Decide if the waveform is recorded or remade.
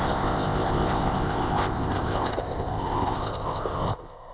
remade